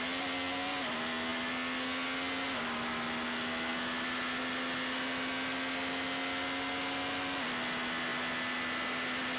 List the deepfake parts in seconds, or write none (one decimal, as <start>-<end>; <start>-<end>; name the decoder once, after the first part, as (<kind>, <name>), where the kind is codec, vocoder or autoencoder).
none